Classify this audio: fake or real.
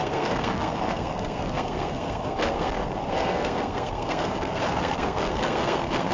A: fake